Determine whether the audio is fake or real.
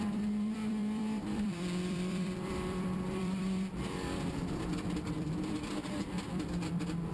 fake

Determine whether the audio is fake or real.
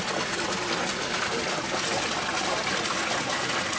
real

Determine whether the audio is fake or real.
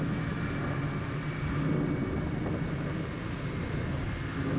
real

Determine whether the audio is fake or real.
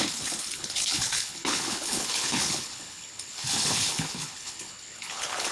fake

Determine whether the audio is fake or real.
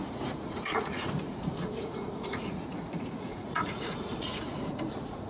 fake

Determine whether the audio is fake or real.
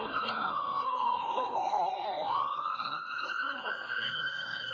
fake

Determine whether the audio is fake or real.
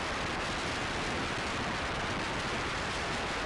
real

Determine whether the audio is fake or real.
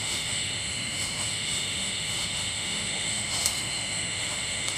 fake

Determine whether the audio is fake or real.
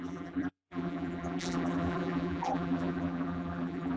fake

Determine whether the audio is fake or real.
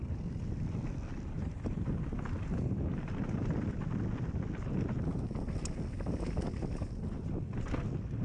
real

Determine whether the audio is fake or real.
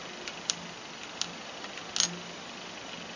real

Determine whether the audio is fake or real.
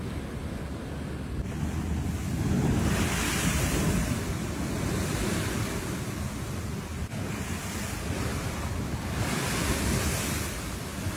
real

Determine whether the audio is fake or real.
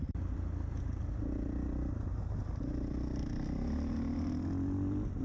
real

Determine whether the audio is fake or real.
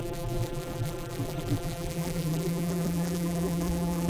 fake